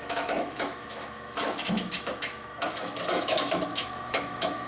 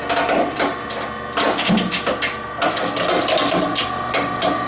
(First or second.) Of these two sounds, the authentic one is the second